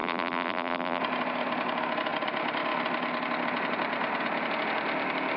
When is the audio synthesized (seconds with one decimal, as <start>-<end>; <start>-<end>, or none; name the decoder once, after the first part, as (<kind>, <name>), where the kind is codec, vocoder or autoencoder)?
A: 0.0-1.0 (vocoder, BigVGAN v2)